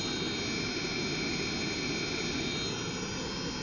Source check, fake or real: real